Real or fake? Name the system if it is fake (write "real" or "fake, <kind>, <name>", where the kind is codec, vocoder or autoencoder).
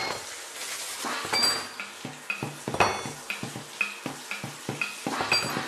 real